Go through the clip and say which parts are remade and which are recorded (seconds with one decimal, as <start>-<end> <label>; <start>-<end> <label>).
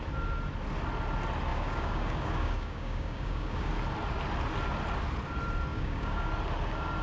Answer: 0.0-1.5 recorded; 1.5-3.7 remade; 3.7-5.7 recorded; 5.7-6.3 remade; 6.3-7.0 recorded